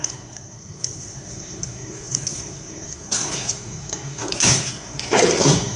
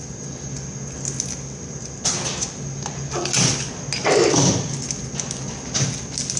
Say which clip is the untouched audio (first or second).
second